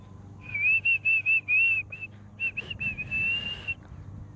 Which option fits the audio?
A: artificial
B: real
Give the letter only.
B